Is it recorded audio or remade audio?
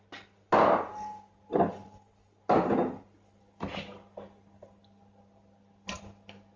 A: recorded